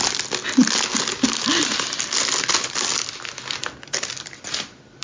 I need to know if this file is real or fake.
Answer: real